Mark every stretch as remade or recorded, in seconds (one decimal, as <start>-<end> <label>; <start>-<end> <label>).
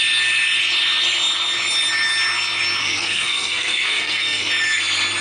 0.0-2.8 recorded; 2.8-4.5 remade; 4.5-5.2 recorded